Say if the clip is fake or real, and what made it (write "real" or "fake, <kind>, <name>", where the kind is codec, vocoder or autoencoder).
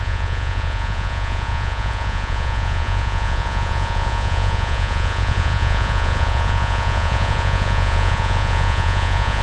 fake, vocoder, Vocos